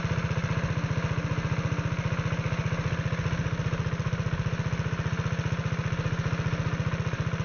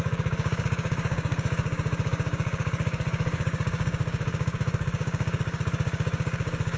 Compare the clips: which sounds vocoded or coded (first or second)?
second